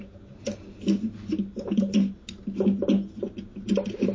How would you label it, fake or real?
real